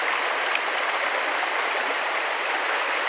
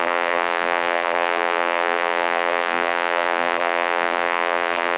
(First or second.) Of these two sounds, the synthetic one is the second